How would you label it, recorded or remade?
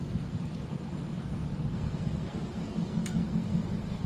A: remade